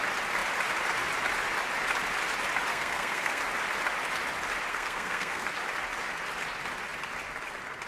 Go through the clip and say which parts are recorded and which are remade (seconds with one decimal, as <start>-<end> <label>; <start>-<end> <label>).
0.0-2.7 recorded; 2.7-3.4 remade; 3.4-4.7 recorded; 4.7-5.5 remade; 5.5-7.9 recorded